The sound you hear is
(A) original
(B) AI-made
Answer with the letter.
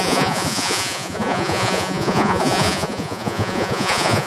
B